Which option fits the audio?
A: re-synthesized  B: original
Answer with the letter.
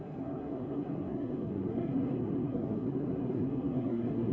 A